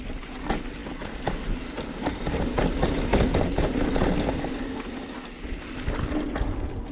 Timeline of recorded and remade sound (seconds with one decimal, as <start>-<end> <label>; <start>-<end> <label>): 0.0-6.9 recorded